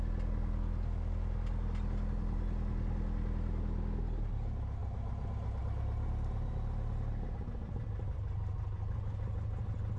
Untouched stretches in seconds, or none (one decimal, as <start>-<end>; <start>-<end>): 0.0-10.0